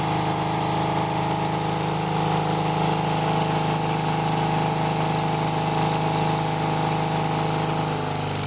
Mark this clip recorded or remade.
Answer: recorded